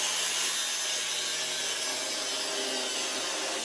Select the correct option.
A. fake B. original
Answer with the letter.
B